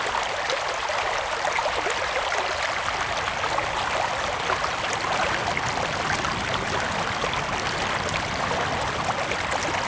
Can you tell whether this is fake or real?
real